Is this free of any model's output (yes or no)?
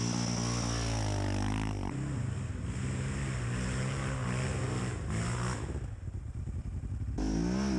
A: yes